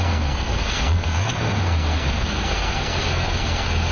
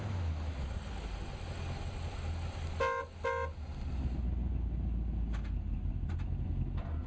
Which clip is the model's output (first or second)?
first